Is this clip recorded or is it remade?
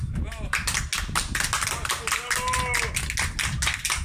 recorded